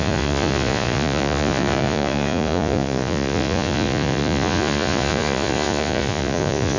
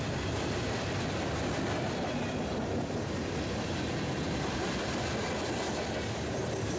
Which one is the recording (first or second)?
second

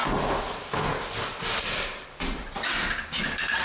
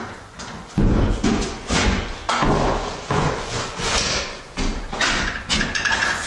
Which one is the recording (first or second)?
first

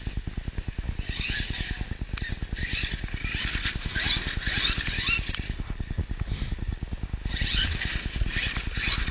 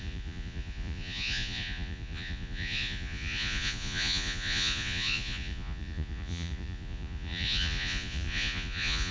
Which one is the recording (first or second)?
first